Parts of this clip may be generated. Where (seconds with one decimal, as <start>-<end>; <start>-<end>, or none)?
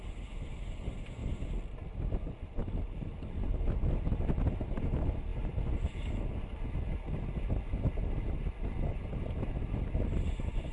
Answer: 2.6-4.4